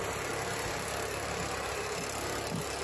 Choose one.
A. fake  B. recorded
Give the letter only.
B